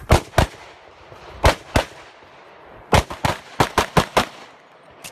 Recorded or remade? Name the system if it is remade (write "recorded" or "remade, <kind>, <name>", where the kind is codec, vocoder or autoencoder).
recorded